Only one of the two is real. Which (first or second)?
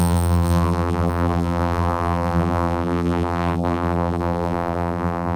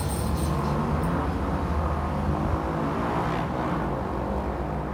second